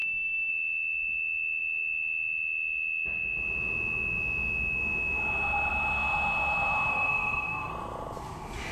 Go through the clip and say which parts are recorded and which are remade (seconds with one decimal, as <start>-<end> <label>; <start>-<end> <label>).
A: 0.0-0.5 remade; 0.5-6.9 recorded; 6.9-7.7 remade; 7.7-8.7 recorded